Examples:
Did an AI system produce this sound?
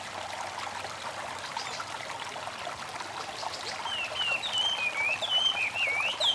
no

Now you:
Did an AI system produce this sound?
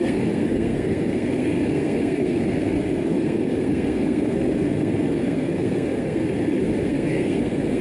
yes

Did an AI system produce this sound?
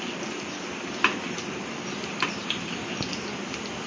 no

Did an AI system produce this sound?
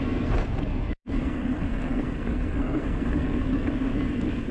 yes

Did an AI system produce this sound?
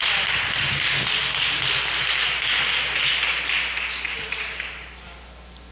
no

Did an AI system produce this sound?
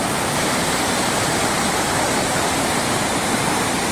yes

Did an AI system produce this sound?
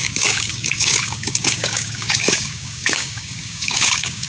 yes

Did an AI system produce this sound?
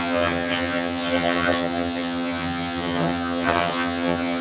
yes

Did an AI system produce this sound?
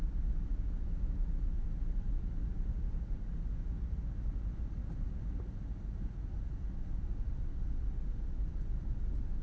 no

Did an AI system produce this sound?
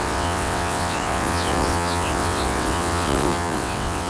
yes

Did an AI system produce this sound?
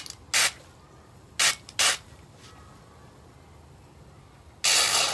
no